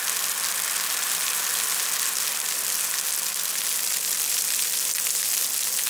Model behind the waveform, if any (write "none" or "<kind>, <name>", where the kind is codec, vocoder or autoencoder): none